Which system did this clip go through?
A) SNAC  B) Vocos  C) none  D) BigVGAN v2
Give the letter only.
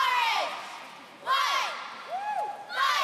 C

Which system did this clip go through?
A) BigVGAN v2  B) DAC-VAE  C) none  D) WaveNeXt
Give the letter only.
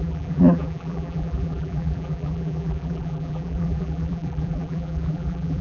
A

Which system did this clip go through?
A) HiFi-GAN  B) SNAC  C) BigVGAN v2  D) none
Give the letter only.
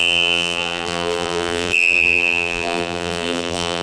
C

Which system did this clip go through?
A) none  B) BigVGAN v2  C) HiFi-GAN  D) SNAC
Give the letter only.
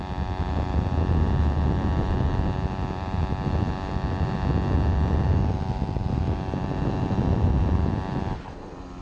A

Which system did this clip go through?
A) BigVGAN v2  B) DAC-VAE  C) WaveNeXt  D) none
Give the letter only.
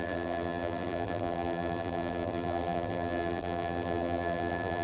A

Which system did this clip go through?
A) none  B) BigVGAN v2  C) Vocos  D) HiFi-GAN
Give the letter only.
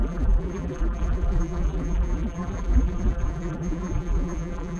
B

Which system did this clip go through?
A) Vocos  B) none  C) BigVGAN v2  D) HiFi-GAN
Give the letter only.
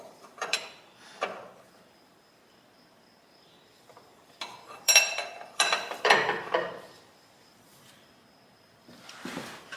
C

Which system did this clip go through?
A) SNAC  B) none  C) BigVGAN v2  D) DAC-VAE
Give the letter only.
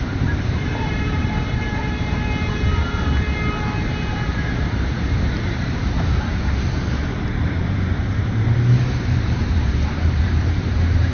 C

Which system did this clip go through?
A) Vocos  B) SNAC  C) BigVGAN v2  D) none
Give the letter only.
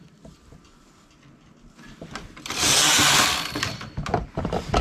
D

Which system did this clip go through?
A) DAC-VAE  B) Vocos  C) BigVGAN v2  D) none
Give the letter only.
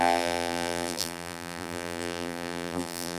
C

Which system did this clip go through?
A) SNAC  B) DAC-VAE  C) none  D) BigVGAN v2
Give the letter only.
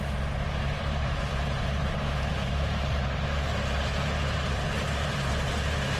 D